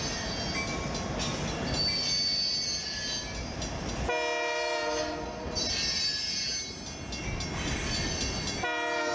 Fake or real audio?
real